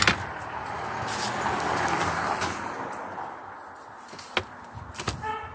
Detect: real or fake real